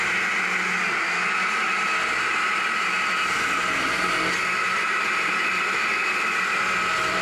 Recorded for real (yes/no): yes